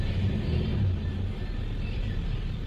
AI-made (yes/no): no